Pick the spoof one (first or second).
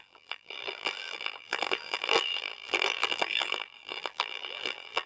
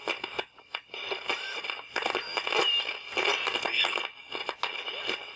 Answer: first